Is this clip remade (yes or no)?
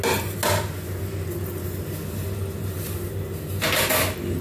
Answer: no